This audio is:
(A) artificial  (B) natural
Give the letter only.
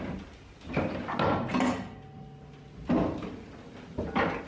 B